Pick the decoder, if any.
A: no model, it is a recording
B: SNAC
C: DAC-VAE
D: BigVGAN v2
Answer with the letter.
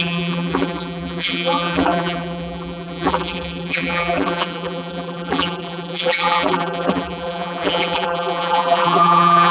D